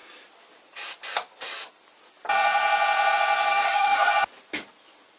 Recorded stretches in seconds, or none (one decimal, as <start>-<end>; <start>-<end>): 0.0-3.5; 4.1-5.2

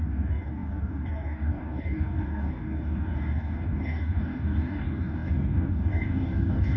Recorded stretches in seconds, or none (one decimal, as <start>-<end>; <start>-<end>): none